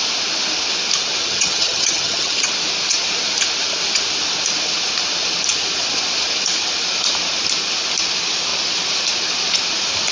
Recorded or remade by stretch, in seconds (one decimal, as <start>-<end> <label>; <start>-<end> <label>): 0.0-1.2 recorded; 1.2-2.5 remade; 2.5-10.1 recorded